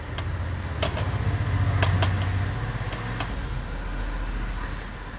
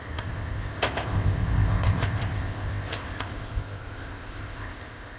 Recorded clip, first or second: first